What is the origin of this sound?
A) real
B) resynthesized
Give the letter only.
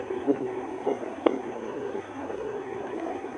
B